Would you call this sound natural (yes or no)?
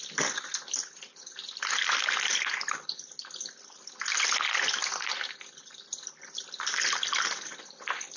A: yes